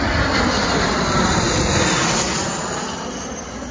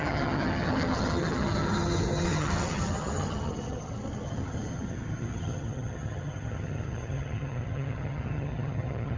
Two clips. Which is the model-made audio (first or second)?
second